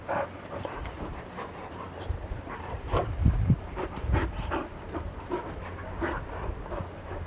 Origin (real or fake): fake